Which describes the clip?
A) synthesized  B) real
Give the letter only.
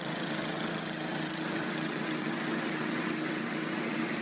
A